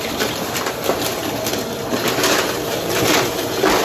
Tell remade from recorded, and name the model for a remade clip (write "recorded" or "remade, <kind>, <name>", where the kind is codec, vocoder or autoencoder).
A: remade, vocoder, BigVGAN v2